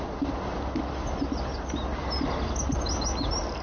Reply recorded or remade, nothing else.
recorded